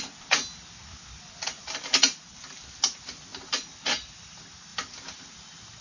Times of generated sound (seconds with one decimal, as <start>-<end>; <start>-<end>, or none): none